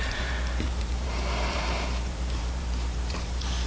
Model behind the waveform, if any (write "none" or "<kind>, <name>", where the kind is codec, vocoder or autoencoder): vocoder, BigVGAN v2